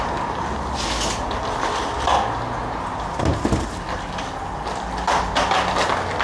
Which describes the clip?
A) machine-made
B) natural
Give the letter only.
B